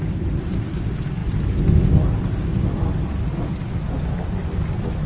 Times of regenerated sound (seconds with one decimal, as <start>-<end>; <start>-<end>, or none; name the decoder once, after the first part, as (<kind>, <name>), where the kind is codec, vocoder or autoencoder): none